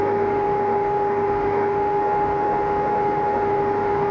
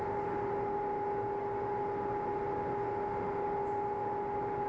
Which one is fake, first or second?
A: first